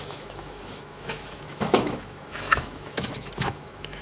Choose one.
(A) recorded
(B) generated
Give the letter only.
B